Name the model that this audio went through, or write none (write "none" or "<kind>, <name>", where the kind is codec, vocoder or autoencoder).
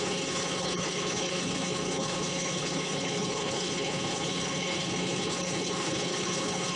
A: codec, HILCodec